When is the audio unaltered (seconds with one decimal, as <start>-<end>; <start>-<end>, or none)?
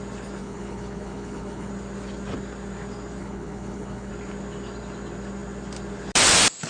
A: 0.0-0.4; 1.7-3.2; 4.1-6.7